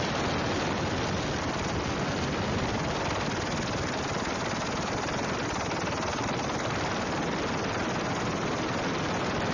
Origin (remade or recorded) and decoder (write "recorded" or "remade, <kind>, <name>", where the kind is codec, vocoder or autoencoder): recorded